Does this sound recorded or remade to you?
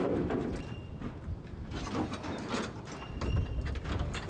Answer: remade